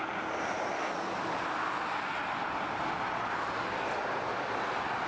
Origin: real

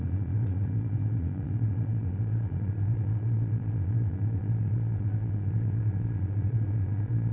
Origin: fake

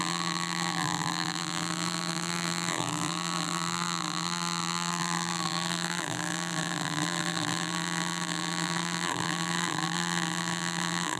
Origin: fake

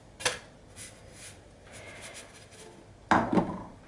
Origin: real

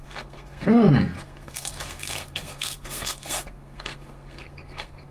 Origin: fake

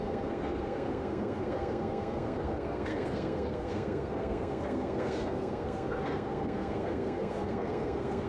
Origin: fake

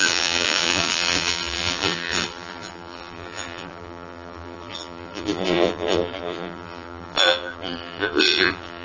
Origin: fake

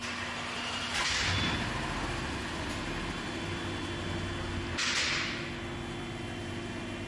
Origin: real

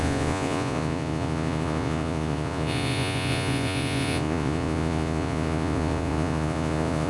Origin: fake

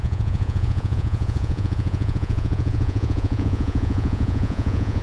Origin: fake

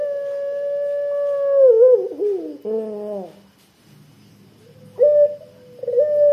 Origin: real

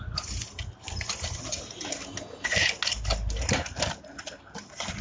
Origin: real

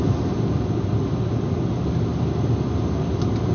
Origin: real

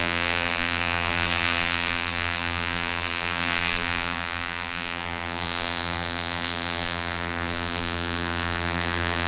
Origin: fake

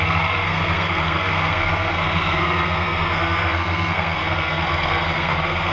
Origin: fake